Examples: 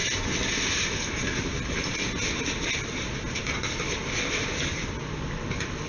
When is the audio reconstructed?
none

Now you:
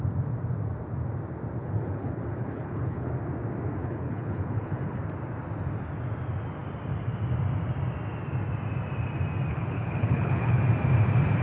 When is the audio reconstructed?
1.6-3.1 (codec, HILCodec); 3.8-5.0; 9.5-10.6

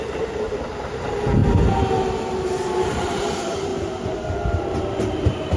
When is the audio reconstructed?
0.0-1.4 (vocoder, BigVGAN v2); 2.8-3.7; 4.6-5.6

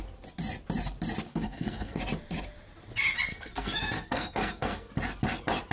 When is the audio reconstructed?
1.3-2.0 (codec, SNAC); 3.3-4.9

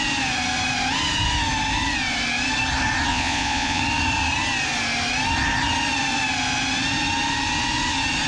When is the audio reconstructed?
3.1-3.8 (vocoder, Vocos)

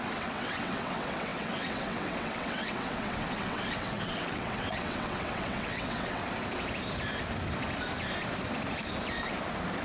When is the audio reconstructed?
0.0-6.2 (vocoder, WaveNeXt)